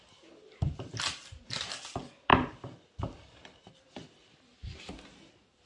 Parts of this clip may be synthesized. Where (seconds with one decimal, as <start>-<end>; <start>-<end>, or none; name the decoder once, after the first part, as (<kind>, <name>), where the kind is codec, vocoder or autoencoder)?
4.2-4.8 (vocoder, BigVGAN v2)